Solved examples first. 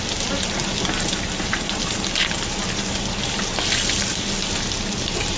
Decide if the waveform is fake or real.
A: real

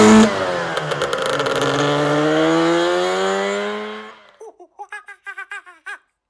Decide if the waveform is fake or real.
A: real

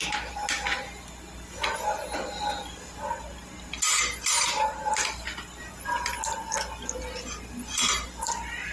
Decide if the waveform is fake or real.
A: real